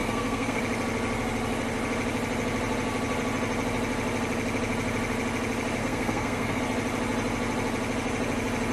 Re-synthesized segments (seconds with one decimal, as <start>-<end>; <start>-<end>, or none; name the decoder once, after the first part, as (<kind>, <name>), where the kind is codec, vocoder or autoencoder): 0.0-0.6 (codec, SNAC); 5.8-6.6